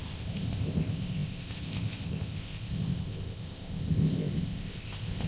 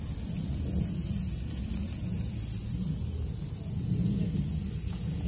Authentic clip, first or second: second